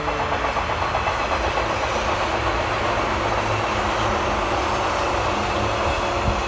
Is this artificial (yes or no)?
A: no